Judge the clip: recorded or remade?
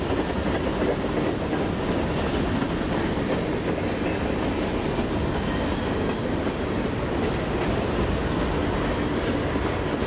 recorded